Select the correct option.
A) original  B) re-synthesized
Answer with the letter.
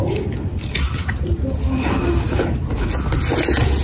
A